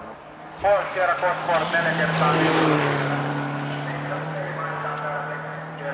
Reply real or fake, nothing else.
real